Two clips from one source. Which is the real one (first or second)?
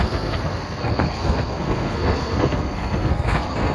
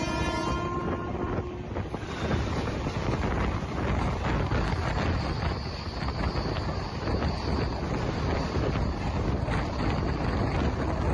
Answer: second